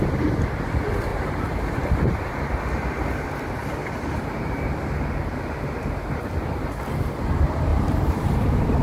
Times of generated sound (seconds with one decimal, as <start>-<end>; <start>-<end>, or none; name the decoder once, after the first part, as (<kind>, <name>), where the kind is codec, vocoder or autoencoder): 1.1-2.6 (vocoder, BigVGAN v2); 3.8-4.5; 7.7-8.8